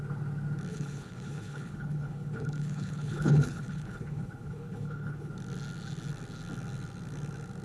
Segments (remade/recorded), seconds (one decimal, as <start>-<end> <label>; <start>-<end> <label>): 0.0-0.7 recorded; 0.7-5.3 remade; 5.3-7.6 recorded